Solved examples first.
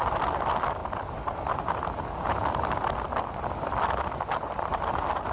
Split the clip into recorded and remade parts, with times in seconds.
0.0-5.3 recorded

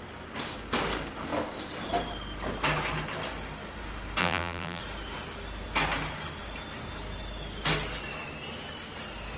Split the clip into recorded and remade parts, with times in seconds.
0.0-4.2 recorded; 4.2-4.8 remade; 4.8-9.4 recorded

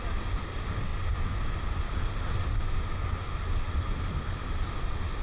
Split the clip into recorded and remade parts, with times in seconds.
0.0-5.2 recorded

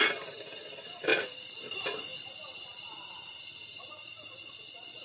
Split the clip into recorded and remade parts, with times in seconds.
0.0-5.0 remade

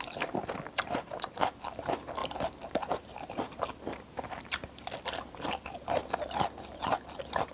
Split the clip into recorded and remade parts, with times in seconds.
0.0-2.2 recorded; 2.2-4.7 remade; 4.7-7.5 recorded